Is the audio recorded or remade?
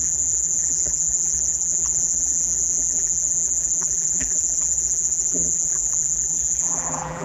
remade